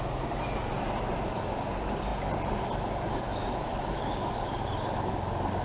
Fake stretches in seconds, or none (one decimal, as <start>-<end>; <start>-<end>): 3.7-4.5